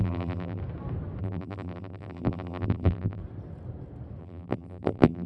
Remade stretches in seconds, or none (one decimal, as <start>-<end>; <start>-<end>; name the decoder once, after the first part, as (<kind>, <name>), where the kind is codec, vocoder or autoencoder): 0.0-0.6 (vocoder, BigVGAN v2); 1.2-3.2; 4.2-5.3